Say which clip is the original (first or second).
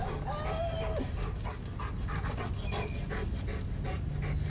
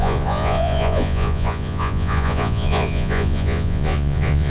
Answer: first